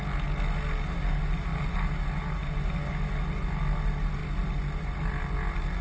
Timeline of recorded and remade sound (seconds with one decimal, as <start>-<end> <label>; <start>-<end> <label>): 0.0-5.8 recorded